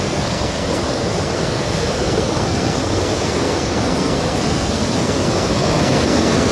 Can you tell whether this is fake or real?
fake